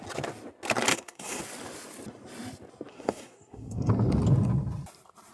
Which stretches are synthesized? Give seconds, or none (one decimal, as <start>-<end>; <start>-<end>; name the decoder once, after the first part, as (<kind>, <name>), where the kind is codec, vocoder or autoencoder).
0.9-1.4 (codec, SNAC); 2.9-3.9